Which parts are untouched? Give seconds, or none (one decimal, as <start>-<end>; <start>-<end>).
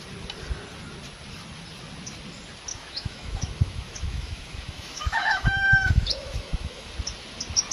0.0-2.7; 6.9-7.7